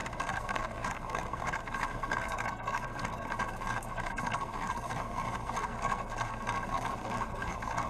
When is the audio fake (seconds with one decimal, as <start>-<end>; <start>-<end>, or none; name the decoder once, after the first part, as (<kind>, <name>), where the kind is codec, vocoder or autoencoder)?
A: 0.0-7.9 (codec, SNAC)